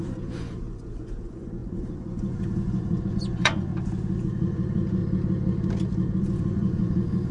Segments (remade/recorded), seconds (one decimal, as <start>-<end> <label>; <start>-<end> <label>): 0.0-3.7 remade; 3.7-4.2 recorded; 4.2-5.0 remade; 5.0-6.2 recorded; 6.2-7.3 remade